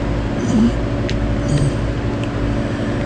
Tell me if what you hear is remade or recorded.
recorded